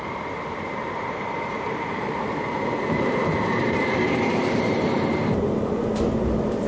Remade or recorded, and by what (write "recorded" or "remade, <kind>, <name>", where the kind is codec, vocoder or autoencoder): remade, vocoder, BigVGAN v2